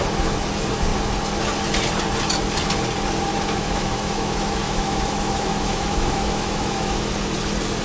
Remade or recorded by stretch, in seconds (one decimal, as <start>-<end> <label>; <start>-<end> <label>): 0.0-3.3 recorded; 3.3-7.1 remade; 7.1-7.8 recorded